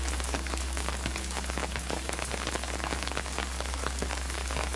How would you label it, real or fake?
fake